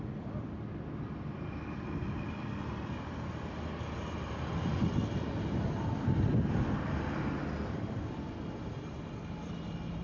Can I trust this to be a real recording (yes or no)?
yes